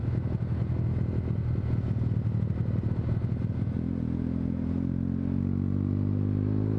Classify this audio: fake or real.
real